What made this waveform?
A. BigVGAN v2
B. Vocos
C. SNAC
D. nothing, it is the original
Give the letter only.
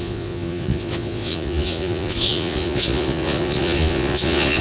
B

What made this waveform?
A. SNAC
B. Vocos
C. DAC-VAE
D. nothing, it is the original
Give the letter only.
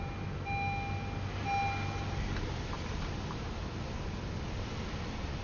D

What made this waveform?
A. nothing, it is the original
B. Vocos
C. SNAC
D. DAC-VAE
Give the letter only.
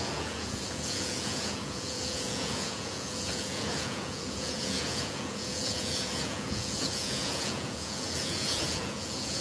B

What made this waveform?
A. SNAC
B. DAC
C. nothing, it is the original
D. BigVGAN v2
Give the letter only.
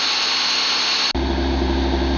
C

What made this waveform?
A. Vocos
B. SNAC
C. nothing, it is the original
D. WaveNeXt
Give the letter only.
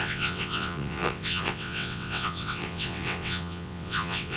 D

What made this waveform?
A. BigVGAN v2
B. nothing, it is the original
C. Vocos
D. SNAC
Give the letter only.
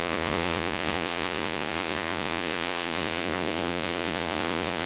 C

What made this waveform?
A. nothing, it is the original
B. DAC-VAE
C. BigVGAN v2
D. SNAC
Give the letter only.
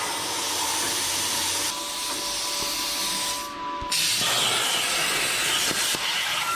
A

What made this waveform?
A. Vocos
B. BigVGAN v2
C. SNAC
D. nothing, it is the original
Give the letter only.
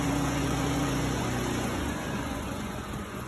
A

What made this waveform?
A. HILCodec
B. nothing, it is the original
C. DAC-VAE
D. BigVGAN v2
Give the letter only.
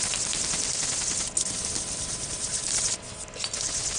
B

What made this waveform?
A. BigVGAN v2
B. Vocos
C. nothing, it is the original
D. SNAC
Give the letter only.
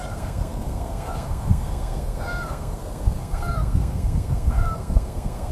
D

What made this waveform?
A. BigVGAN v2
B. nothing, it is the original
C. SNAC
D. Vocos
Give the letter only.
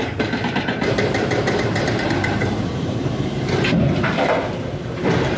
A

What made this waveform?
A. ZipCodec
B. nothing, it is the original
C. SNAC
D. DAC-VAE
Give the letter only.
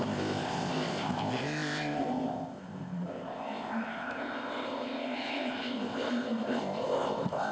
A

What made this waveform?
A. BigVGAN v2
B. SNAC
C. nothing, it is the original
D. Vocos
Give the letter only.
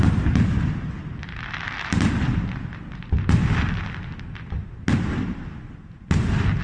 A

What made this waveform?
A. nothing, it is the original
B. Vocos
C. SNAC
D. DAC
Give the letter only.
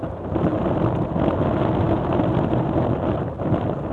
A